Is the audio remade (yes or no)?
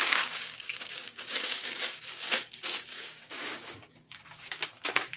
yes